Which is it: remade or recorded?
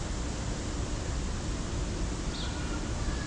recorded